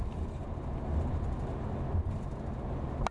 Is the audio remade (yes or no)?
no